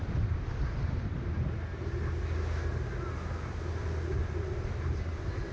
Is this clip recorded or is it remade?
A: recorded